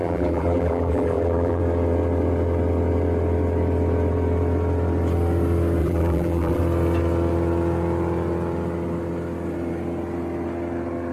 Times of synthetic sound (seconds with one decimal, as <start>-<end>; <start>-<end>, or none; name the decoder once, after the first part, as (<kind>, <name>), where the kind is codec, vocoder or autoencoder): 0.0-1.6 (vocoder, BigVGAN v2); 5.8-6.6